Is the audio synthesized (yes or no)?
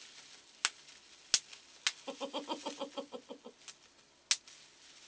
no